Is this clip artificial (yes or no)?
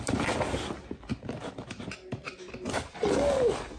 no